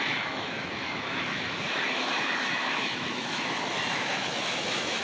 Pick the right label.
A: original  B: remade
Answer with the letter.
B